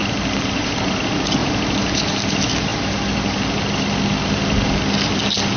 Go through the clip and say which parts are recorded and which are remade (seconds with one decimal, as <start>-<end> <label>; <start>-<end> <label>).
0.0-5.6 recorded